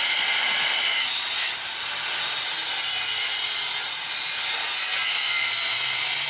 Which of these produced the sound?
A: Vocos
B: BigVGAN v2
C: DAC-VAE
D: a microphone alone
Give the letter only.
B